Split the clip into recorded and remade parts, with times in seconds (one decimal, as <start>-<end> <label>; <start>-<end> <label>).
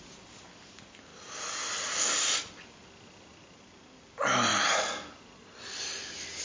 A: 0.0-6.4 recorded